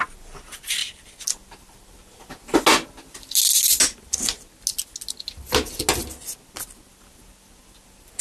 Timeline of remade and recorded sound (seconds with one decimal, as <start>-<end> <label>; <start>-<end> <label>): 0.0-8.2 recorded